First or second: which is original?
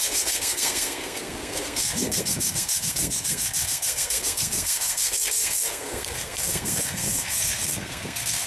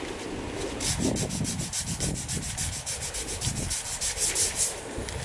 second